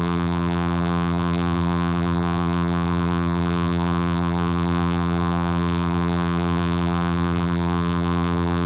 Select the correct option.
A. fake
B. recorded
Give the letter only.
A